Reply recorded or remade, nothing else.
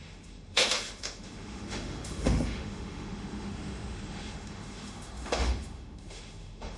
remade